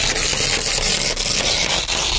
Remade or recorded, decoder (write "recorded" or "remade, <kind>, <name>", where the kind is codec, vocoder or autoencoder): recorded